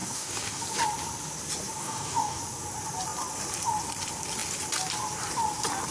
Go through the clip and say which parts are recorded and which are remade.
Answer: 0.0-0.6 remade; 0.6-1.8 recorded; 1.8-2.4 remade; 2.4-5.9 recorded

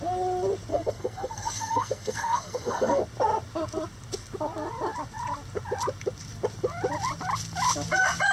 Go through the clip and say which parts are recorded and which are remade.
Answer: 0.0-0.7 recorded; 0.7-3.0 remade; 3.0-8.3 recorded

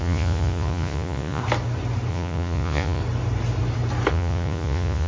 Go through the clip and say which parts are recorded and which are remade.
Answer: 0.0-1.4 remade; 1.4-2.1 recorded; 2.1-3.0 remade; 3.0-4.1 recorded; 4.1-5.1 remade

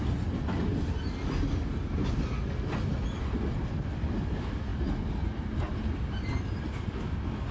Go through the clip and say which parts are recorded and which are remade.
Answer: 0.0-7.5 recorded

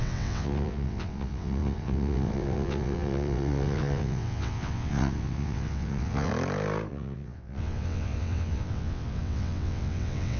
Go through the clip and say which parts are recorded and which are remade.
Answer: 0.0-6.3 remade; 6.3-6.9 recorded; 6.9-10.4 remade

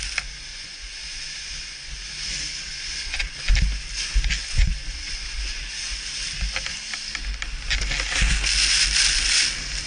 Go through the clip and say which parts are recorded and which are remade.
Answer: 0.0-0.5 recorded; 0.5-1.9 remade; 1.9-2.7 recorded; 2.7-3.5 remade; 3.5-4.4 recorded; 4.4-5.6 remade; 5.6-9.9 recorded

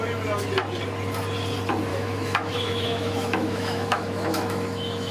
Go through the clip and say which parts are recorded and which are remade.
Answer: 0.0-1.9 recorded; 1.9-5.1 remade

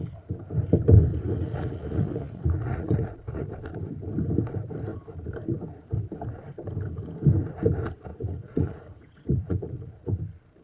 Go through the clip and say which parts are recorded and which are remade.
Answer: 0.0-1.1 recorded; 1.1-3.5 remade; 3.5-8.1 recorded; 8.1-10.2 remade; 10.2-10.6 recorded